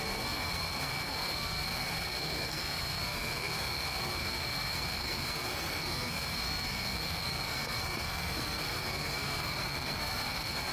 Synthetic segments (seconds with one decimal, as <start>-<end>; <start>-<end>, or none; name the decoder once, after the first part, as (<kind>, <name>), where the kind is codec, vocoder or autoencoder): 0.0-10.7 (codec, SNAC)